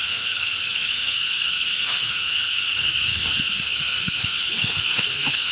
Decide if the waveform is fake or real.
fake